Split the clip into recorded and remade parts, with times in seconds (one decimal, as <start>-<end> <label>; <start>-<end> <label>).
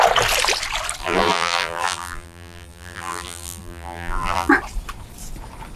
0.0-1.0 recorded; 1.0-4.5 remade; 4.5-5.8 recorded